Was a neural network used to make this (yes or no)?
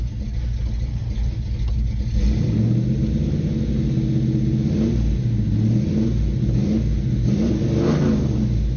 no